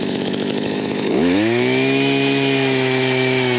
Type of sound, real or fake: fake